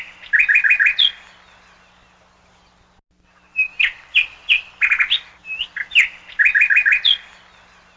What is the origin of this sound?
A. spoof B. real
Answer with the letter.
B